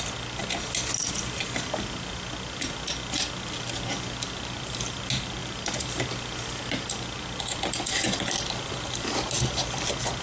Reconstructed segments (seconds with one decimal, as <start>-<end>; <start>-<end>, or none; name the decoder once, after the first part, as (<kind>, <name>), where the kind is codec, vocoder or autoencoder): none